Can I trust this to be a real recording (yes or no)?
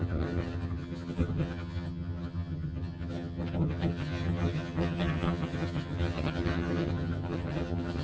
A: no